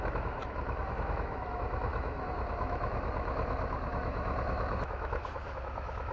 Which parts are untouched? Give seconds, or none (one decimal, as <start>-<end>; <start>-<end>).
none